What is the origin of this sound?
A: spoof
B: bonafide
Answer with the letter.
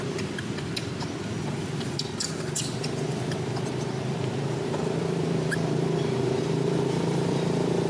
A